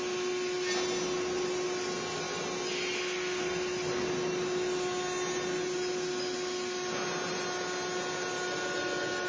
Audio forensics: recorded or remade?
recorded